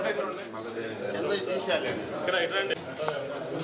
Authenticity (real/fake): real